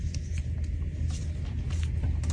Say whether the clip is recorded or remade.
recorded